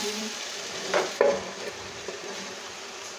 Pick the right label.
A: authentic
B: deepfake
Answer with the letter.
B